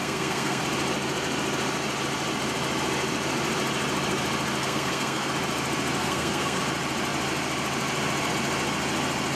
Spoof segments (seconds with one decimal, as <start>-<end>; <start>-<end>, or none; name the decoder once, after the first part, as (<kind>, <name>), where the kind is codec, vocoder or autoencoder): 0.0-0.6 (codec, SNAC); 4.6-5.3; 6.0-6.6